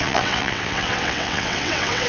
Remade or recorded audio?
remade